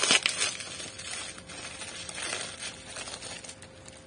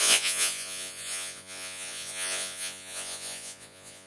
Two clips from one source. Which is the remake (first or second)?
second